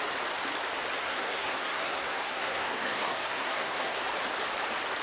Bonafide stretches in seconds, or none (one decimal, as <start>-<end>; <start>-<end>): 0.0-1.0; 4.0-5.0